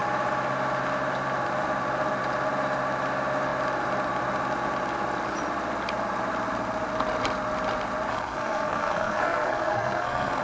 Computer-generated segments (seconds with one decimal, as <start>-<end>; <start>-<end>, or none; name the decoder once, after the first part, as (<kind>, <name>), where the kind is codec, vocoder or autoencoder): 8.1-10.4 (codec, SNAC)